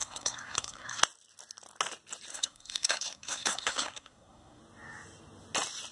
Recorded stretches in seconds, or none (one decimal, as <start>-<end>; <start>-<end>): 1.0-2.3; 4.6-5.9